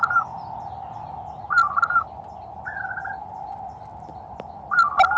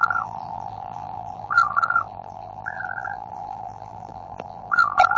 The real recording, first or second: first